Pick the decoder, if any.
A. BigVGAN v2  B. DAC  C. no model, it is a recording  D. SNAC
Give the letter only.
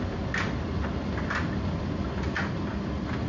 C